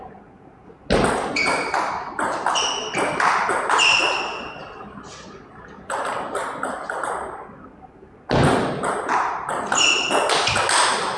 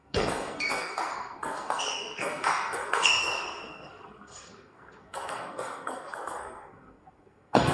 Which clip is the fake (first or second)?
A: second